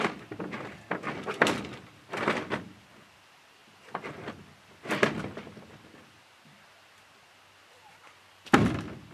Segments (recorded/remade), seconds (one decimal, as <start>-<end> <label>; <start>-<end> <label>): 0.0-9.1 recorded